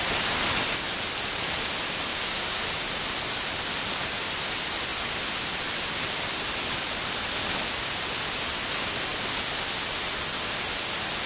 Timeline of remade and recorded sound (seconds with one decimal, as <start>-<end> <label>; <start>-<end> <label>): 0.0-2.1 recorded; 2.1-2.6 remade; 2.6-11.3 recorded

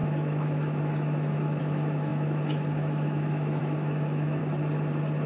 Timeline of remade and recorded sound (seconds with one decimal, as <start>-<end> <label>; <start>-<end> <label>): 0.0-4.4 remade; 4.4-5.3 recorded

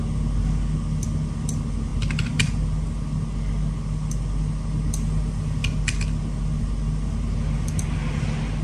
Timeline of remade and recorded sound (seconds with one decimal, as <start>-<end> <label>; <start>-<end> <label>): 0.0-8.6 recorded

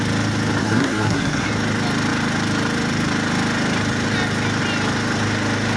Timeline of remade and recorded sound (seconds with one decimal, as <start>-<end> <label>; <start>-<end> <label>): 0.0-0.6 recorded; 0.6-1.5 remade; 1.5-5.8 recorded

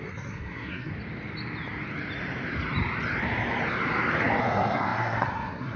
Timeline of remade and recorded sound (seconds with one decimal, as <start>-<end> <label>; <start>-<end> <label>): 0.0-0.9 remade; 0.9-4.4 recorded; 4.4-5.8 remade

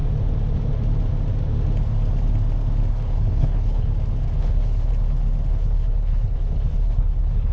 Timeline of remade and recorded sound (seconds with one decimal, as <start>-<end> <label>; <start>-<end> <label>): 0.0-2.9 recorded; 2.9-3.9 remade; 3.9-4.4 recorded; 4.4-4.9 remade; 4.9-5.5 recorded; 5.5-7.5 remade